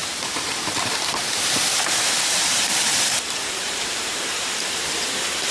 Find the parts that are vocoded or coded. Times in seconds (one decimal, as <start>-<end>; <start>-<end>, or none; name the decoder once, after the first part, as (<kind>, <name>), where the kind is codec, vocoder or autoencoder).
0.0-5.5 (vocoder, BigVGAN v2)